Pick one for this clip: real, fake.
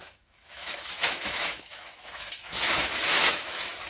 fake